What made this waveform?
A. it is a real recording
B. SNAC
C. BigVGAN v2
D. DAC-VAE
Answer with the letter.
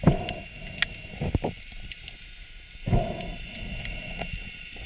A